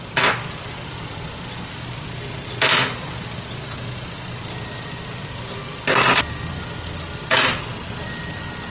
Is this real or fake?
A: real